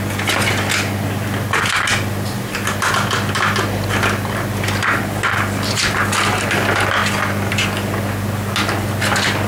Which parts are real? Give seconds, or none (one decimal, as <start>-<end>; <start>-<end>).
0.0-9.5